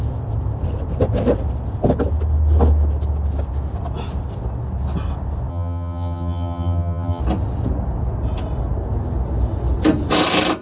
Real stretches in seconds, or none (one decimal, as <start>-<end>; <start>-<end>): 0.0-5.5; 7.2-10.6